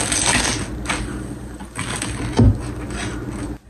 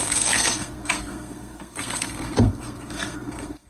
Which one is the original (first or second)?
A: first